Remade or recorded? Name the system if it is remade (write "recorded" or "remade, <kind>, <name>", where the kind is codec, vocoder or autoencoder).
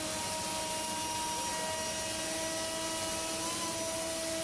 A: recorded